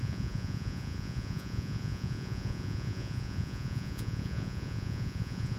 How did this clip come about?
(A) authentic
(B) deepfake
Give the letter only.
B